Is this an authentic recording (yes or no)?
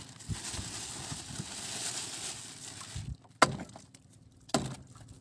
yes